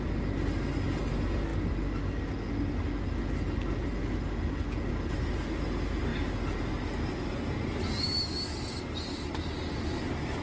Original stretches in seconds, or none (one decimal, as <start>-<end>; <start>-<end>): 0.0-10.4